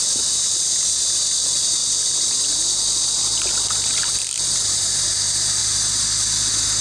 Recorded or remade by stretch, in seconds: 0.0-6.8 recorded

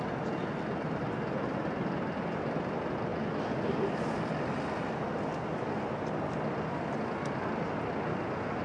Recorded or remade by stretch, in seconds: 0.0-8.6 recorded

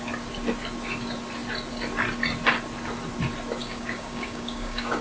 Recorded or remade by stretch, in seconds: 0.0-3.6 recorded; 3.6-5.0 remade

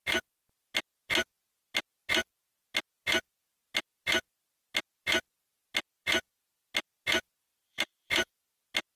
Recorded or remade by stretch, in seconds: 0.0-7.5 recorded; 7.5-8.3 remade; 8.3-9.0 recorded